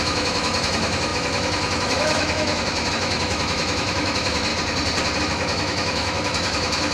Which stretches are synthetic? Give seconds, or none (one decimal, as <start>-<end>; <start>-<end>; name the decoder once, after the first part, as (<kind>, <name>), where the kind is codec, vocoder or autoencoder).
0.0-4.5 (autoencoder, DAC-VAE); 5.2-6.9